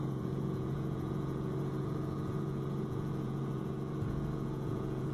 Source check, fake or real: fake